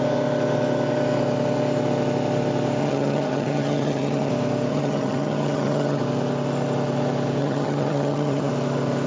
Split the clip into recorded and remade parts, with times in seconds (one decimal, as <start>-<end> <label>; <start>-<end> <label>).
0.0-2.8 recorded; 2.8-4.3 remade; 4.3-4.7 recorded; 4.7-6.0 remade; 6.0-7.4 recorded; 7.4-8.5 remade; 8.5-9.1 recorded